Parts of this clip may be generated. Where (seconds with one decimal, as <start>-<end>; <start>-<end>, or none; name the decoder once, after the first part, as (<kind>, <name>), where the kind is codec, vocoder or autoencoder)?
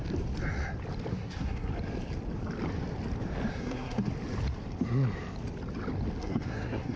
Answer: 1.1-1.7 (codec, SNAC); 3.5-4.1; 6.2-7.0